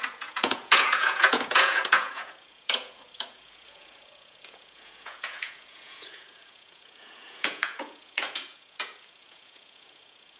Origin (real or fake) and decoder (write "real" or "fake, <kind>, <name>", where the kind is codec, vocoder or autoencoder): fake, vocoder, Vocos